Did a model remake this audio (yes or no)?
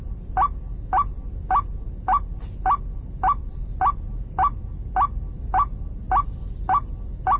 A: no